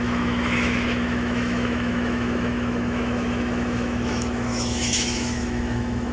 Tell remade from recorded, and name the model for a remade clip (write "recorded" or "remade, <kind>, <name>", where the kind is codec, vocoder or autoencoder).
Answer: remade, autoencoder, DAC-VAE